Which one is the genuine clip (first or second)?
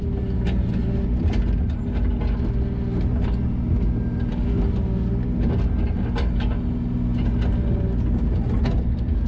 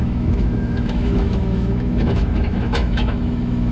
first